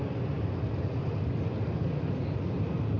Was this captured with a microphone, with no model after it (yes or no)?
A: yes